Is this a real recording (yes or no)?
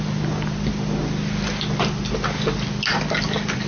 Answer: yes